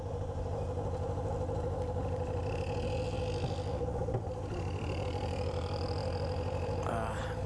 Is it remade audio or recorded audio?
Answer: recorded